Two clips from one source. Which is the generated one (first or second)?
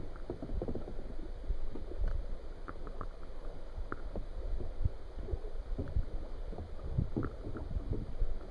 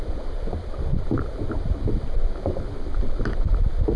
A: second